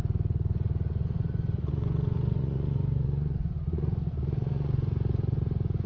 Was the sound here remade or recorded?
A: remade